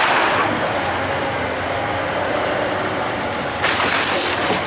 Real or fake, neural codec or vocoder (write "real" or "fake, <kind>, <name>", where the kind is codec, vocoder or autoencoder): real